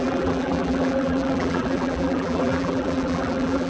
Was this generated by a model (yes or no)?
yes